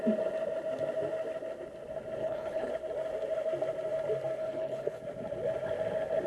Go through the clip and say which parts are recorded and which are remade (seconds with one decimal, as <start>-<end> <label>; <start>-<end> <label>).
0.0-2.2 recorded; 2.2-2.7 remade; 2.7-4.4 recorded; 4.4-5.0 remade; 5.0-6.3 recorded